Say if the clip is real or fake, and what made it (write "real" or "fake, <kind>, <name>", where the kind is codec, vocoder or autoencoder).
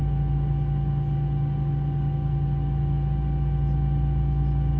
real